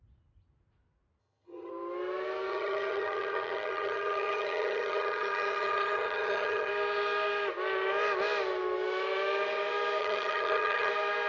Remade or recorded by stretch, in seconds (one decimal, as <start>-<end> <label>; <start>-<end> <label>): 0.0-1.2 recorded; 1.2-1.7 remade; 1.7-2.5 recorded; 2.5-6.7 remade; 6.7-10.0 recorded; 10.0-10.9 remade; 10.9-11.3 recorded